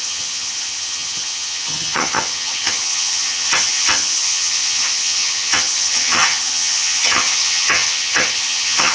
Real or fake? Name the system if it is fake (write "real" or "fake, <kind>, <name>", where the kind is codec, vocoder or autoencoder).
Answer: fake, vocoder, HiFi-GAN